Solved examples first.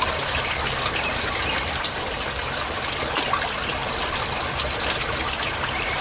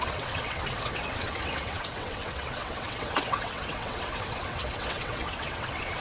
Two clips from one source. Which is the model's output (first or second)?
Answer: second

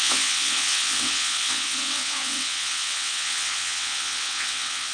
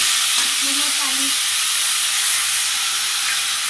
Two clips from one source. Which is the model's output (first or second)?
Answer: first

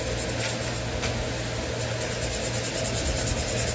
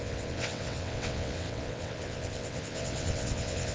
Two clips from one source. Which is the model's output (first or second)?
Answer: second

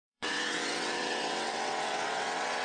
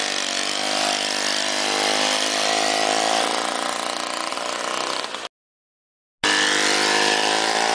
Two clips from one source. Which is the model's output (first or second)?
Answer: first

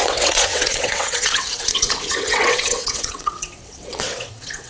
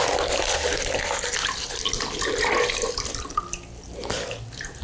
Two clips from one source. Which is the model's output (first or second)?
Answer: first